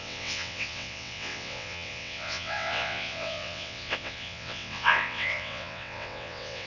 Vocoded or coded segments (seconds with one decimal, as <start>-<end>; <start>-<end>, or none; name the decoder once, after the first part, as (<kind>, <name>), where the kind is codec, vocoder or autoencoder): 0.0-6.7 (vocoder, WaveNeXt)

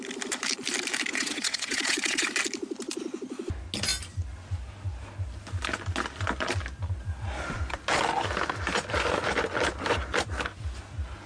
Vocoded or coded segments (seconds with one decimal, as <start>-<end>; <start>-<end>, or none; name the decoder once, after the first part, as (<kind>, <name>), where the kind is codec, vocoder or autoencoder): 1.1-2.3 (vocoder, WaveNeXt)

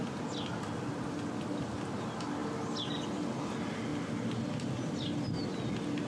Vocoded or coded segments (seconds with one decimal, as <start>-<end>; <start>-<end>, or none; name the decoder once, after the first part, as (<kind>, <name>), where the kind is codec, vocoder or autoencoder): none

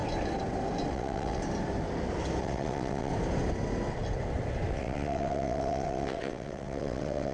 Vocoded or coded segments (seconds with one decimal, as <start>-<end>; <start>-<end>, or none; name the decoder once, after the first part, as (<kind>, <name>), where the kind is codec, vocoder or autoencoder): 0.9-1.4 (vocoder, WaveNeXt); 2.4-3.1; 4.7-7.3